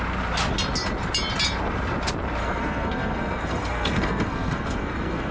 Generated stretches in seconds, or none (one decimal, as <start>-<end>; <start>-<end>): 2.4-5.3